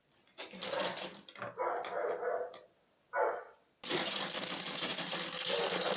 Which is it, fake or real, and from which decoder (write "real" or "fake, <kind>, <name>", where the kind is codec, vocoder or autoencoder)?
real